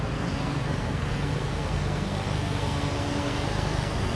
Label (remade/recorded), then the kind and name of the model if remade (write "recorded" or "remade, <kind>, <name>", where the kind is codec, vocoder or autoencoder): remade, codec, SNAC